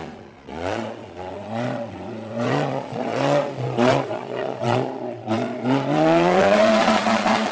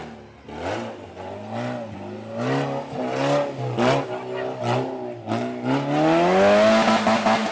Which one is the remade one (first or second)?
first